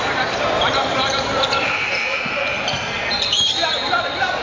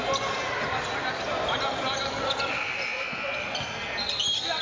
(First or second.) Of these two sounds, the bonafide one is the second